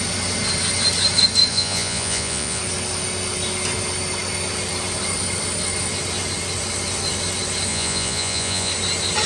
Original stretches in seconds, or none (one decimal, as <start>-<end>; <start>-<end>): 0.0-1.5; 2.6-7.7; 8.7-9.3